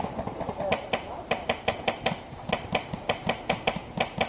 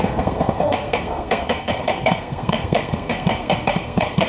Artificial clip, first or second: second